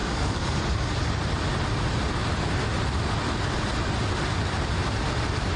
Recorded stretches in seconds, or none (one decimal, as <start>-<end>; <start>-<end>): 0.6-5.6